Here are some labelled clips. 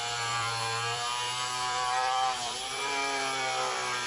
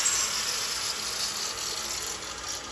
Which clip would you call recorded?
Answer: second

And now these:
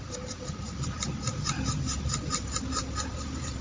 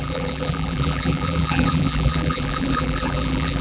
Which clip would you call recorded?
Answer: first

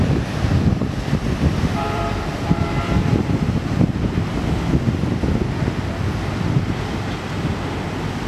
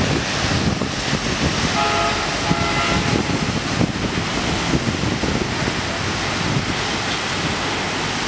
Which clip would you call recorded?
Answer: second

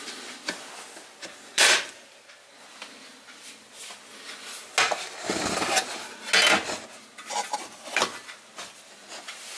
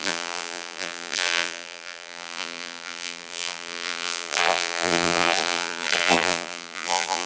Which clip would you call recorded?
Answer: first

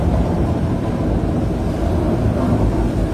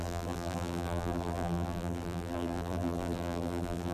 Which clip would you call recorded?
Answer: first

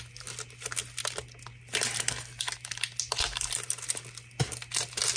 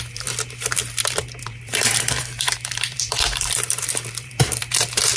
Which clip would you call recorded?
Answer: first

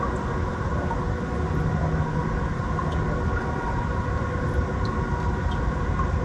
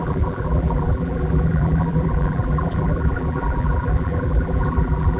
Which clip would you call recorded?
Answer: first